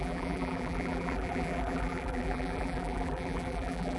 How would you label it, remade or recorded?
remade